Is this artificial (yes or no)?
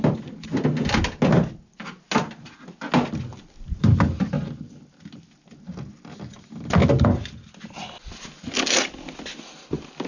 no